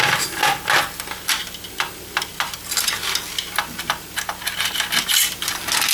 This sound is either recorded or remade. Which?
recorded